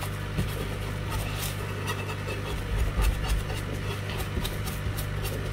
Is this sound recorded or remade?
recorded